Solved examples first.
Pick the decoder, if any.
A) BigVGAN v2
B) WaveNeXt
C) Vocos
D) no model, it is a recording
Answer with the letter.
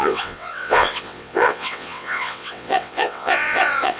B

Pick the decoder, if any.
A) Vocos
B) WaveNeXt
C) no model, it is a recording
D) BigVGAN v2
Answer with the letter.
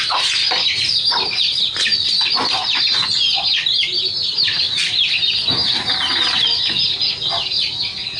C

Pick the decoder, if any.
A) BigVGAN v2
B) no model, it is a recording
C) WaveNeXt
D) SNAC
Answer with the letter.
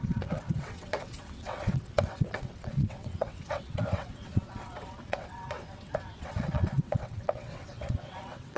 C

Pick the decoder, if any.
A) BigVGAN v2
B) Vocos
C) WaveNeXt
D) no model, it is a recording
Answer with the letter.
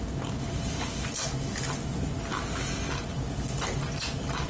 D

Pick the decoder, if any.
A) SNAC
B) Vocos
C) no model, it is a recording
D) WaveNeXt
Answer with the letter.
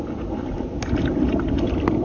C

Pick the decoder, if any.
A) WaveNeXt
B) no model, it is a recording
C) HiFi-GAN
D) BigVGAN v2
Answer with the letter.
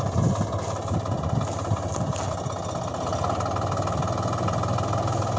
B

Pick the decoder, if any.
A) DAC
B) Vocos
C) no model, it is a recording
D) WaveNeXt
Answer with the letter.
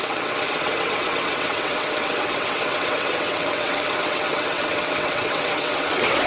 D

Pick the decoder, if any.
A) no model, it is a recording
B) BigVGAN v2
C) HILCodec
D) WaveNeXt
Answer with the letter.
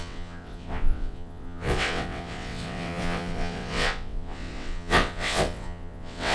D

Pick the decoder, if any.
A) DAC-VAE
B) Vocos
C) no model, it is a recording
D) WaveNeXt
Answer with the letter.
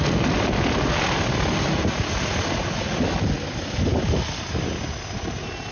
C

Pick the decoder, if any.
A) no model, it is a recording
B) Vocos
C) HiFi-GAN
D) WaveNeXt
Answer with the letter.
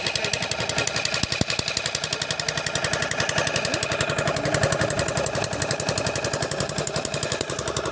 A